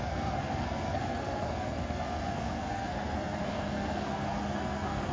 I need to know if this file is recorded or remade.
remade